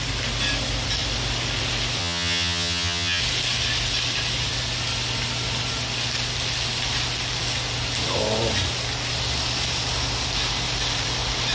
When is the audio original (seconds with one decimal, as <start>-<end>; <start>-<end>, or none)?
0.0-2.0; 3.2-11.5